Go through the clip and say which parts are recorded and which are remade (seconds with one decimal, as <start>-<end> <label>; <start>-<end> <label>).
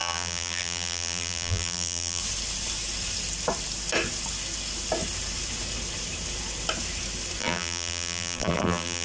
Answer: 0.0-2.2 remade; 2.2-7.4 recorded; 7.4-9.0 remade